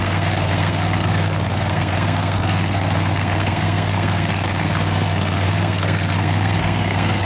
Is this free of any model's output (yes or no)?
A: no